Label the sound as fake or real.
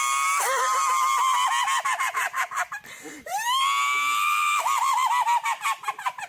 real